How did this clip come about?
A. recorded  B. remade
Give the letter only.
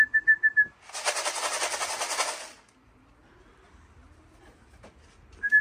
A